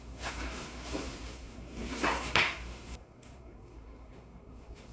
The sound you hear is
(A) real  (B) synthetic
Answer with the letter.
B